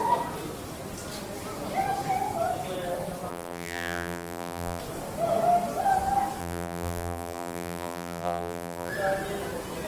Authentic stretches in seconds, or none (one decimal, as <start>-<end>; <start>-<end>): 0.0-3.3; 4.8-6.4; 8.9-9.9